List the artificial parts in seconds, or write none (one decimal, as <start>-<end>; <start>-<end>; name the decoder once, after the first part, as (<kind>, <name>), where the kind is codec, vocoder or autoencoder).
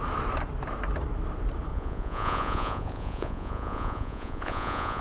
1.7-5.0 (vocoder, Vocos)